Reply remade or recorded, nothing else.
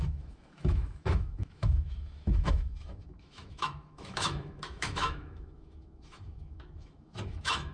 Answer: remade